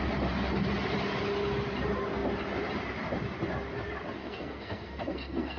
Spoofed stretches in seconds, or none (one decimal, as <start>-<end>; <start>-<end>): 4.2-5.6